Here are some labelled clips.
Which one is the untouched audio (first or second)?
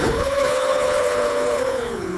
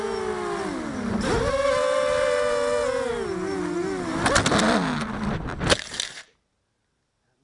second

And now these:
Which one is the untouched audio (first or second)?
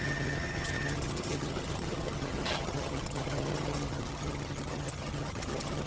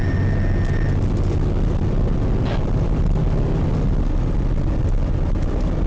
second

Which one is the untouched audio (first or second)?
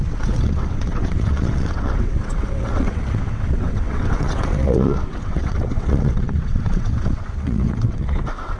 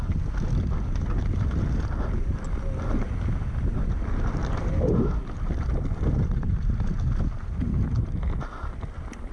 second